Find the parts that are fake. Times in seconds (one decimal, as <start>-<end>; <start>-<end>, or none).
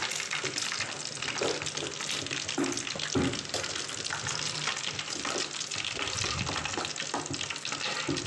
none